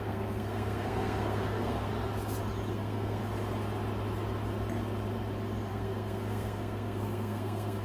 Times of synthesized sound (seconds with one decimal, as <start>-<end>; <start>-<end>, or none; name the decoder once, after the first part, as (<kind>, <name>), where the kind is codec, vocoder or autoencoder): 0.0-1.9 (codec, SNAC); 2.7-3.2; 5.7-7.8